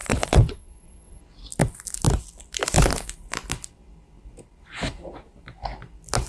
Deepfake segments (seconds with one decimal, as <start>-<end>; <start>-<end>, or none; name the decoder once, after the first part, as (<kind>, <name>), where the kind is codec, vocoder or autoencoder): 0.0-1.2 (vocoder, WaveNeXt)